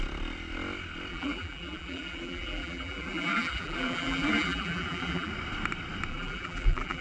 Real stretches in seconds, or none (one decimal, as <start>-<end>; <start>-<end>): 0.0-1.1; 5.3-6.1